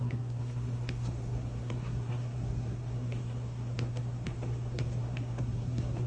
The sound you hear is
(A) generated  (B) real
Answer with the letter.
A